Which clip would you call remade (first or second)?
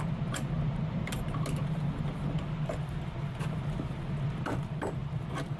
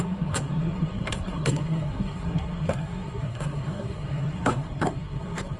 second